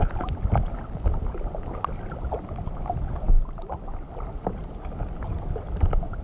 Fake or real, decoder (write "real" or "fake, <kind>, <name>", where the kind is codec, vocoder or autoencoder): fake, vocoder, BigVGAN v2